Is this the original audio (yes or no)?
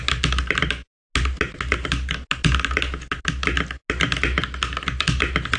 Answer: yes